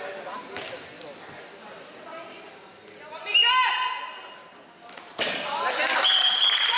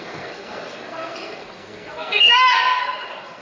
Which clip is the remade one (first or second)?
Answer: second